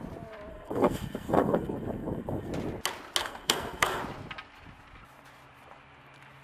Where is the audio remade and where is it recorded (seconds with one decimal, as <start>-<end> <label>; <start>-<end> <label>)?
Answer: 0.0-0.5 recorded; 0.5-2.5 remade; 2.5-3.2 recorded; 3.2-4.0 remade; 4.0-6.4 recorded